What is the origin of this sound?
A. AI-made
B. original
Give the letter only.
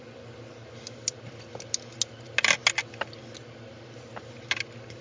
B